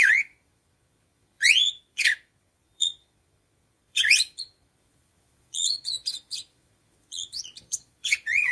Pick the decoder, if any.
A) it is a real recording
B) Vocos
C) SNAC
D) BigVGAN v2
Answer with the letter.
B